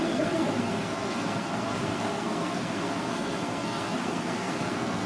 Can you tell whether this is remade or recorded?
remade